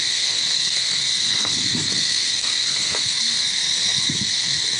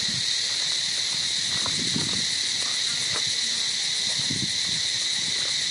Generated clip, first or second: first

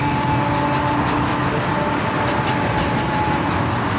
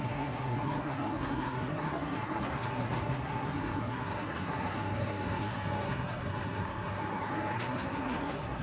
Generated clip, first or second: second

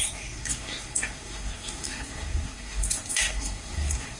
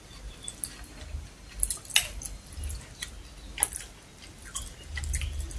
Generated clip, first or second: first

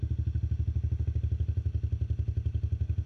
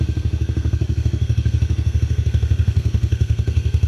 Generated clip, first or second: second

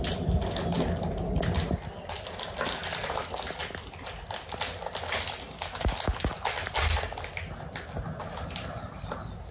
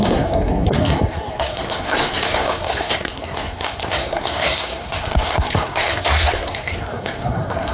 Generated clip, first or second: second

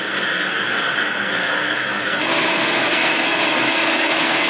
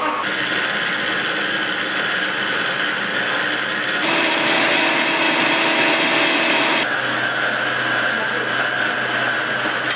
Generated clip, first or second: first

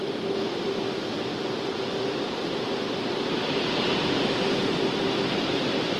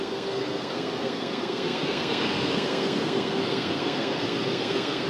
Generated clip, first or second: second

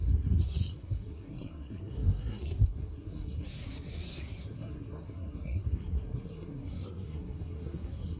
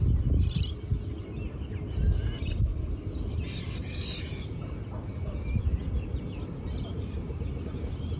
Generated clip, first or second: first